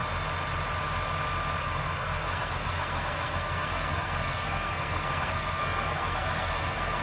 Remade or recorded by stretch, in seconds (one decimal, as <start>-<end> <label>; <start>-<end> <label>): 0.0-1.6 recorded; 1.6-7.0 remade